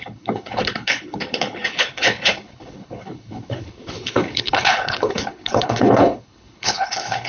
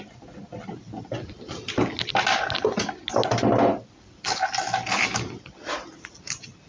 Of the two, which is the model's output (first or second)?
first